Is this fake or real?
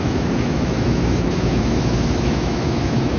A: fake